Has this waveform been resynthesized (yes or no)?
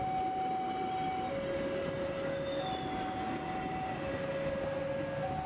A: no